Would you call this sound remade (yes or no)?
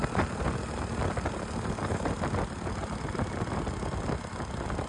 no